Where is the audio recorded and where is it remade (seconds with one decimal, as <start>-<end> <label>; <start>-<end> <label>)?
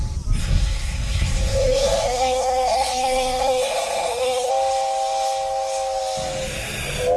0.0-0.4 recorded; 0.4-4.5 remade; 4.5-7.2 recorded